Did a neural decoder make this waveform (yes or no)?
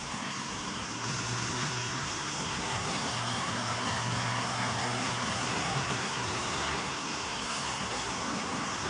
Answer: yes